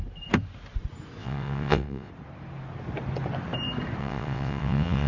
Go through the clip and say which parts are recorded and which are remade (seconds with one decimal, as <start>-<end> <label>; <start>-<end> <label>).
0.0-1.2 recorded; 1.2-2.1 remade; 2.1-4.0 recorded; 4.0-5.1 remade